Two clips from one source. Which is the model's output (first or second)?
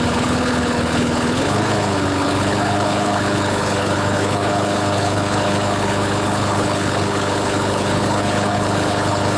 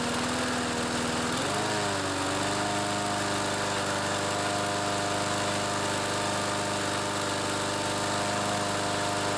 first